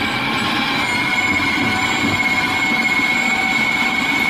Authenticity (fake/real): real